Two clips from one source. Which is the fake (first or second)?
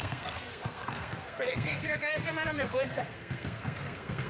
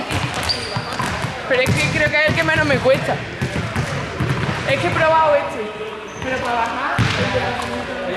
first